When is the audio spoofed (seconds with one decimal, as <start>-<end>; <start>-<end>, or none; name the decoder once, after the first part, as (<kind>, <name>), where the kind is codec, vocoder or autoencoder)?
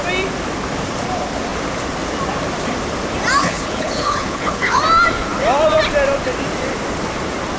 3.4-4.8 (codec, HILCodec)